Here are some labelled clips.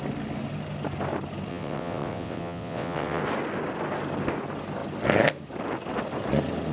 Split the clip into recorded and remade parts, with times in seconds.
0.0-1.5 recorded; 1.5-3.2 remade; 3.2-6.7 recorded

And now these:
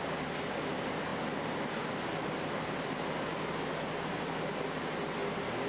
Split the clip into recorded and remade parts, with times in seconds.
0.0-5.7 recorded

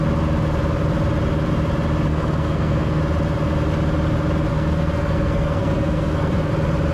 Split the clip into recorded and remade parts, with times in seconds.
0.0-2.1 recorded; 2.1-3.0 remade; 3.0-4.5 recorded; 4.5-6.5 remade; 6.5-6.9 recorded